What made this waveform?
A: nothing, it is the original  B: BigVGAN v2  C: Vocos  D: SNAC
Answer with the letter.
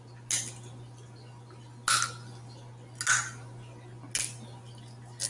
A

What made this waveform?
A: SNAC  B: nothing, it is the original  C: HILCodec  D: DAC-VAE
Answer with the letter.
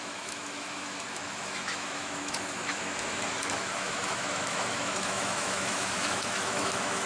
D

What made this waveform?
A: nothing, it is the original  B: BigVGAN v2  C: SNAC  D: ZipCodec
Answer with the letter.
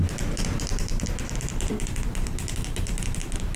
B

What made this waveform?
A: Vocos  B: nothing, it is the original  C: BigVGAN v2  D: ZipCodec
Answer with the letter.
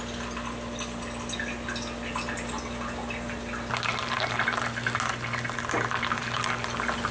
B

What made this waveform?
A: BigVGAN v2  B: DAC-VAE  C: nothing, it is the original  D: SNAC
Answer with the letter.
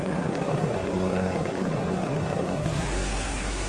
D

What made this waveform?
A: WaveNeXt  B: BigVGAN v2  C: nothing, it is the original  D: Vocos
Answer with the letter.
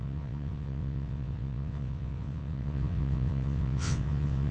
A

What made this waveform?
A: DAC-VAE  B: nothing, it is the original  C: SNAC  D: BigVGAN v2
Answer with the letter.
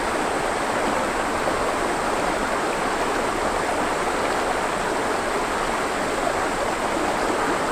B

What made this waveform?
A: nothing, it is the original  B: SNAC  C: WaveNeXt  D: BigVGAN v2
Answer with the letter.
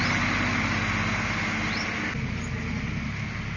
A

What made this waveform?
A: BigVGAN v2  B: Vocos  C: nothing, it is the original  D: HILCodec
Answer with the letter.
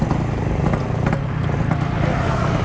C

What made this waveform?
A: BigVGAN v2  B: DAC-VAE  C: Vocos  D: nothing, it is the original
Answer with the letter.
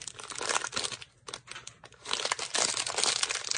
D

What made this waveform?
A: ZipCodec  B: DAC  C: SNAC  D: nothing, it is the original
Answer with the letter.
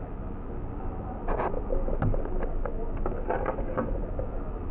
D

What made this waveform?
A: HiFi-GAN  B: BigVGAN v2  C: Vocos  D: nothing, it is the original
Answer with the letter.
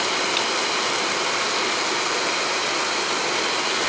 D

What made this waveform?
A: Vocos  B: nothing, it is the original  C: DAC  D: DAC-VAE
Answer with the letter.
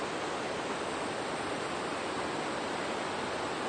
B